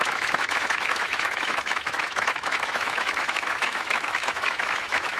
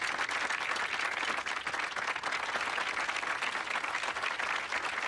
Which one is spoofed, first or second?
first